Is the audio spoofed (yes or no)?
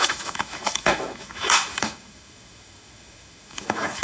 yes